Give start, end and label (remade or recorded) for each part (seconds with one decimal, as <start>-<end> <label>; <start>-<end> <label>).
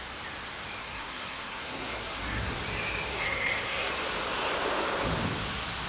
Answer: 0.0-0.8 recorded; 0.8-2.6 remade; 2.6-3.1 recorded; 3.1-3.9 remade; 3.9-5.9 recorded